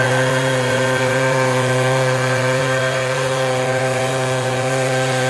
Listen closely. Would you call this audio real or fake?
fake